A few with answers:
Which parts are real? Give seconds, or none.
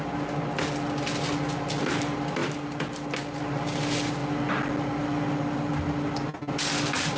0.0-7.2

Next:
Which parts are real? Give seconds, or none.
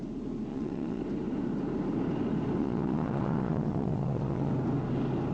0.0-0.5; 1.0-2.6; 4.5-5.3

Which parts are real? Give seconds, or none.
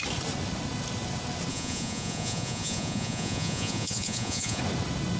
0.0-1.5; 4.6-5.2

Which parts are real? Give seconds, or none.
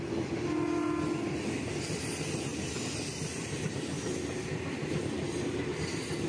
0.0-6.3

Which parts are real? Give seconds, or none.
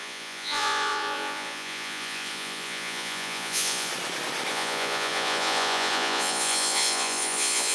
3.9-4.5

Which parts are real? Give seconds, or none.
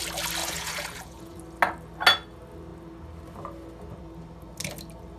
0.0-0.4; 1.4-5.2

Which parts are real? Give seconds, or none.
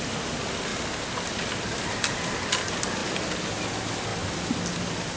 0.0-5.2